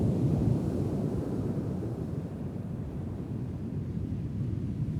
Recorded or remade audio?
remade